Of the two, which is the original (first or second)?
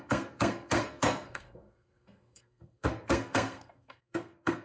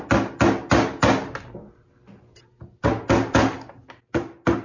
second